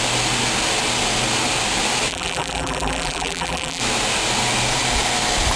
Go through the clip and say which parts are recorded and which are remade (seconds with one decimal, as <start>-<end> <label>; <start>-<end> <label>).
0.0-2.1 recorded; 2.1-3.8 remade; 3.8-5.6 recorded